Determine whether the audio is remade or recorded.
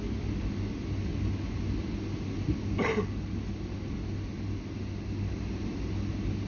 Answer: recorded